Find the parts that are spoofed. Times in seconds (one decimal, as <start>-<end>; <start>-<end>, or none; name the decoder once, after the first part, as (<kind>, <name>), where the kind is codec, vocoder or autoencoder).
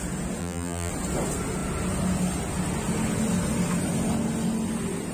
0.4-0.9 (vocoder, BigVGAN v2)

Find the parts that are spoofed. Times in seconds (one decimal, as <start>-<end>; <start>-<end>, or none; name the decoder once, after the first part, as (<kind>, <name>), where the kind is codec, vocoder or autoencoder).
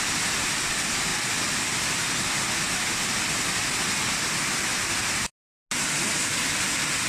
none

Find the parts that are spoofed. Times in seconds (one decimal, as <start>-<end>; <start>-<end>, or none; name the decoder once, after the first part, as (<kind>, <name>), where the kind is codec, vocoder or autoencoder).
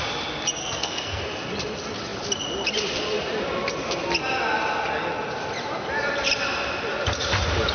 0.6-1.2 (codec, SNAC)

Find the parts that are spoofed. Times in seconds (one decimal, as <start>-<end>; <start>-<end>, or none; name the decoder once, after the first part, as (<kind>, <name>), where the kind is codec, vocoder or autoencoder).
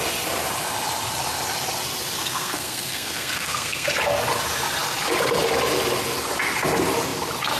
2.2-3.9 (codec, SNAC)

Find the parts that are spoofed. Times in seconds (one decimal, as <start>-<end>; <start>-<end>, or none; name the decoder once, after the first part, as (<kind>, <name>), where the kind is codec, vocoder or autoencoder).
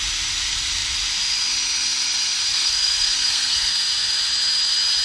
2.5-3.7 (codec, SNAC)